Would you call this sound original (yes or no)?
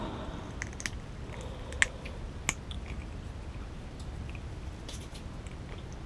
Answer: yes